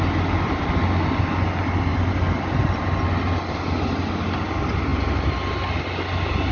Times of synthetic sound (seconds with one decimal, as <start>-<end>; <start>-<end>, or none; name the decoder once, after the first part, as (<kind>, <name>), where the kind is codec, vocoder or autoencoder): none